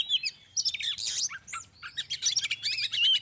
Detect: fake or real real